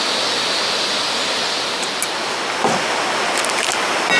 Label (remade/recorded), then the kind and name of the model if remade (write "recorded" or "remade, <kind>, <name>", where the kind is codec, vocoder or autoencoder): recorded